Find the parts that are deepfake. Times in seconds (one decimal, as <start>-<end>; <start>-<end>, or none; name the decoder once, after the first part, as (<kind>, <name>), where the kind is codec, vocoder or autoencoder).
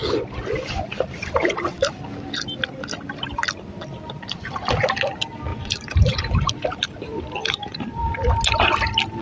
5.5-6.5 (vocoder, BigVGAN v2); 7.4-8.1